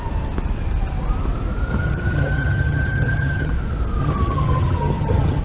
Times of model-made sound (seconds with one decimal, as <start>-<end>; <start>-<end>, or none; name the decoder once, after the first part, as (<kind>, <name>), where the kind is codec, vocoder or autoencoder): 1.7-3.5 (vocoder, HiFi-GAN); 4.0-5.4